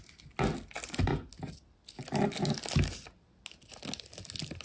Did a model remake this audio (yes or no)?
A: no